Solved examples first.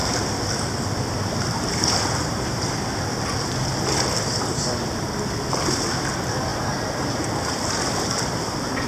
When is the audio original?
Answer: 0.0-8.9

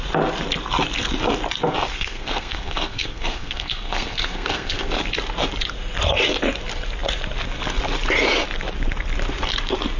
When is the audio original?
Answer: 0.0-1.9; 5.0-10.0

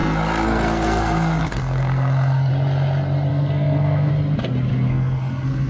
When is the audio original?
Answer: 2.5-3.3; 4.1-4.7

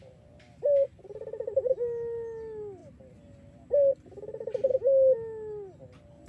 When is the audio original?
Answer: 0.0-6.3